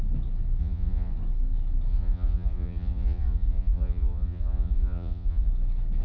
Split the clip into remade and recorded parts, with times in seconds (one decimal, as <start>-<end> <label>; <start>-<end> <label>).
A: 0.0-0.6 recorded; 0.6-1.1 remade; 1.1-1.9 recorded; 1.9-5.5 remade; 5.5-6.0 recorded